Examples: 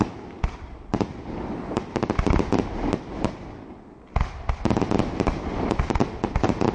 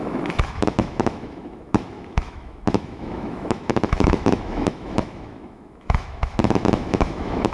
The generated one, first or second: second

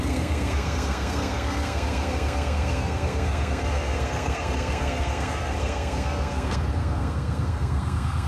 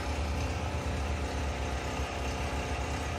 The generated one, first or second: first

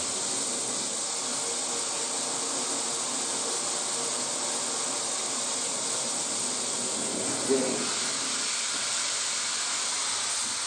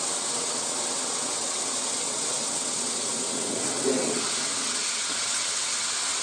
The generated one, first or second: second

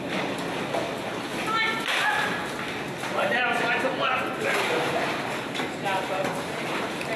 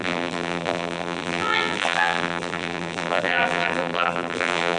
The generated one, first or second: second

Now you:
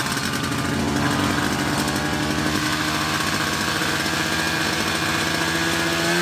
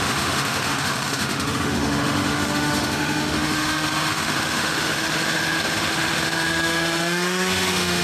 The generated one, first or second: second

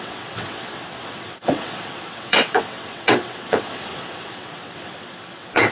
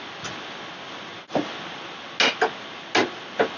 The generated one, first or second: first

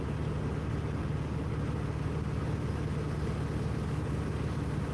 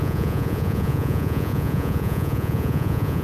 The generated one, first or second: second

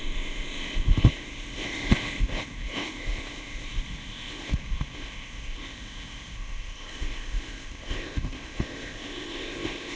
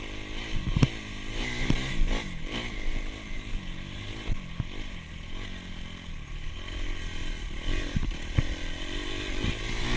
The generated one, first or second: first